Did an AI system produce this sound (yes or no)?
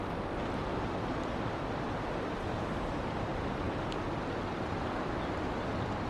no